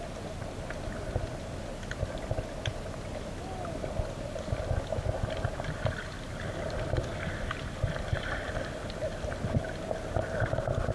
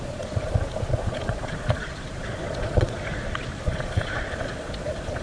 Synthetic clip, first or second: second